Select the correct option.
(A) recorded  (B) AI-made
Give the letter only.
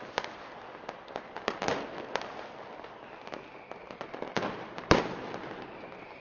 A